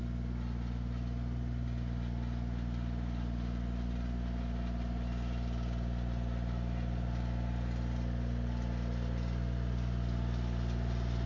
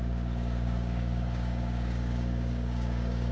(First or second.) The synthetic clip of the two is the second